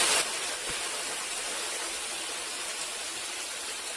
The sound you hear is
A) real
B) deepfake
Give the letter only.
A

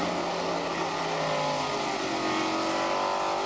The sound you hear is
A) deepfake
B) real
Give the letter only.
B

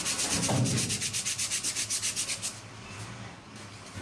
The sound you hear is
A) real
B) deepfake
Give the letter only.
A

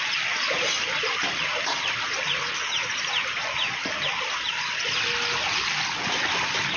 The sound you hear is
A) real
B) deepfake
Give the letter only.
A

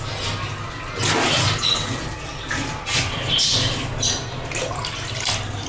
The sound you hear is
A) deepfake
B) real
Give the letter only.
B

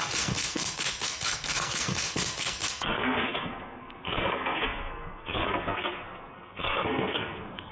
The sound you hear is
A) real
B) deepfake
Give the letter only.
B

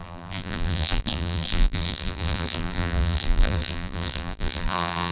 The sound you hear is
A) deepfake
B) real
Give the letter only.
A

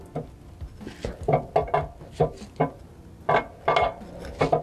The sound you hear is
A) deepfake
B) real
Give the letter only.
B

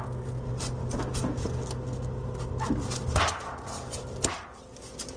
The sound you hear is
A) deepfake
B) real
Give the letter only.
B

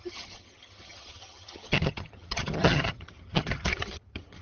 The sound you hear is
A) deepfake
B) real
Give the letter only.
A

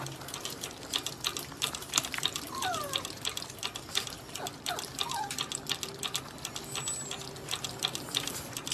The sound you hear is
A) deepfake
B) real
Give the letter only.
B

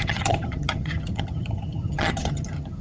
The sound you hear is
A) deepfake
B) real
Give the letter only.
A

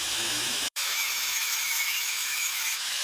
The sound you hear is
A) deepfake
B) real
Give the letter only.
A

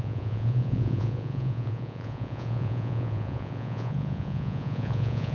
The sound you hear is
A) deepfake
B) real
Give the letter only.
A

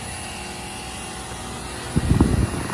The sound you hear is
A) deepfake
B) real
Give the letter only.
B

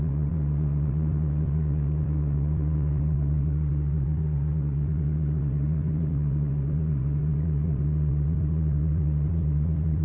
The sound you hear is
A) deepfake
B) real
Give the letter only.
A